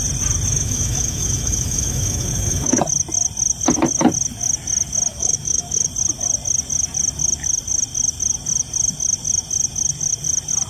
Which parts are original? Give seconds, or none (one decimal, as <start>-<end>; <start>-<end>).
0.0-0.5; 2.8-5.1; 5.9-10.7